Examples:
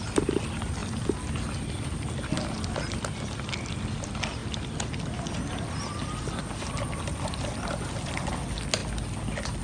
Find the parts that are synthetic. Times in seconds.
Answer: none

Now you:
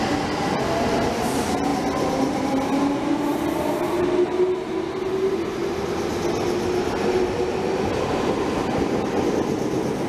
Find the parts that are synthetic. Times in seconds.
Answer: none

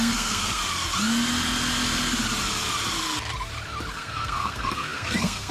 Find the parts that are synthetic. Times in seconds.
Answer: 0.0-0.6 (codec, SNAC); 3.9-5.5

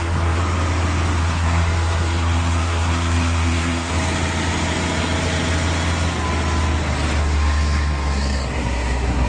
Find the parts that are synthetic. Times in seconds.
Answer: 0.0-0.4 (codec, SNAC); 1.2-3.9; 7.2-9.3

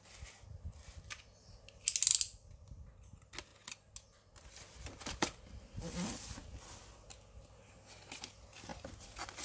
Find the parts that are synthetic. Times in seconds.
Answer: none